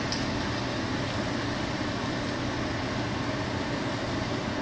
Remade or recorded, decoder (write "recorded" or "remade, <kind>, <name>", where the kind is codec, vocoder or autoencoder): recorded